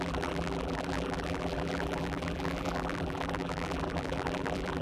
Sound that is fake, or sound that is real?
fake